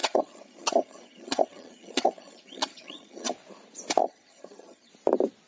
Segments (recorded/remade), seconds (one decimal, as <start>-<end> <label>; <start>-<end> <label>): 0.0-3.3 remade; 3.3-4.0 recorded; 4.0-4.9 remade; 4.9-5.5 recorded